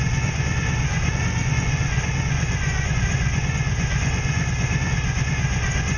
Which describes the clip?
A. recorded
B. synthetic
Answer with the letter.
B